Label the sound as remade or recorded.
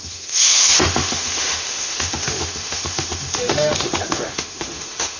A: remade